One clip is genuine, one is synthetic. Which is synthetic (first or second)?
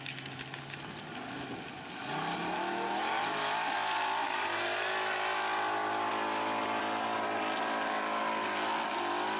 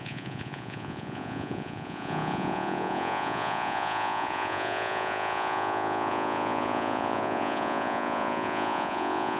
second